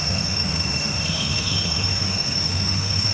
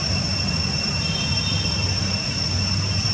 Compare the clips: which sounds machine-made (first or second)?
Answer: first